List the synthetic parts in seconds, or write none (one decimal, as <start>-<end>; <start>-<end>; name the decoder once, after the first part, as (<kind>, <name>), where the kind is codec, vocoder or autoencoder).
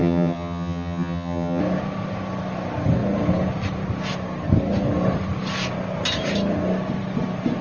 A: 0.0-1.6 (vocoder, HiFi-GAN)